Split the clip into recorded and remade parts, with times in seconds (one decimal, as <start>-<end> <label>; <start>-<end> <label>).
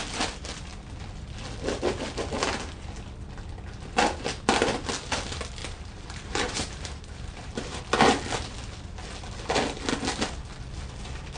0.0-5.6 recorded; 5.6-7.8 remade; 7.8-11.4 recorded